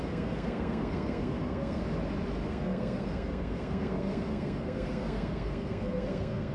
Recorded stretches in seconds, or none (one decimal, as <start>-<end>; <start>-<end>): 1.8-2.5